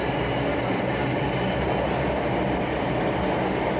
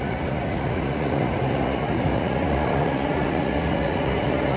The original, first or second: first